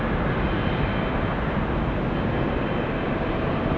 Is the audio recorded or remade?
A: recorded